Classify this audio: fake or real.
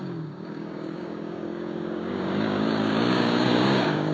fake